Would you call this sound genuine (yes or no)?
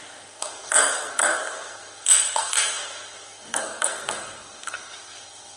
no